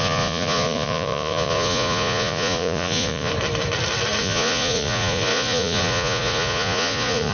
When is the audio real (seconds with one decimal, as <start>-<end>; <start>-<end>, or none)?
3.3-4.2